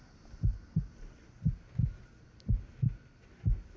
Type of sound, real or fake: real